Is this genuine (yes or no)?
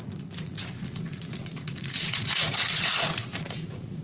no